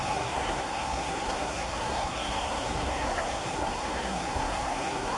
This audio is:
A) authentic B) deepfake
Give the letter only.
B